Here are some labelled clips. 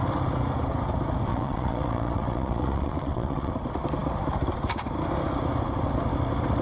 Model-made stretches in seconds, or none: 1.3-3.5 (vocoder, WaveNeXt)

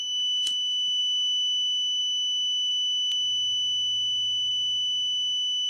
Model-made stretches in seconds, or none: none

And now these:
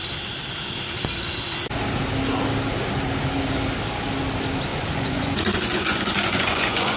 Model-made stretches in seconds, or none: 4.7-7.0 (vocoder, Vocos)

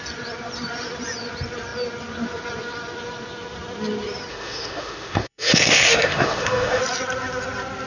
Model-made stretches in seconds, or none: 4.3-6.8 (autoencoder, DAC-VAE)

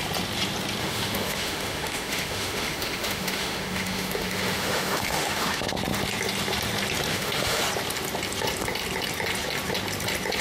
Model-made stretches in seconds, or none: 0.8-5.7 (autoencoder, DAC-VAE); 7.1-7.6

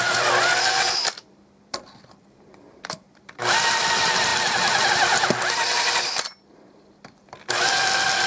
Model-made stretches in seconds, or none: 0.0-8.3 (vocoder, BigVGAN v2)

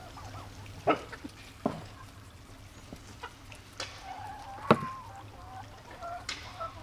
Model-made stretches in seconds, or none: none